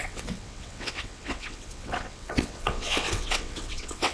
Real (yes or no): no